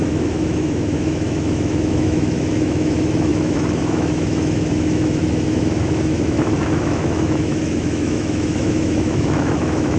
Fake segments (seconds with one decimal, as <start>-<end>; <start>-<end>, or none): 0.0-10.0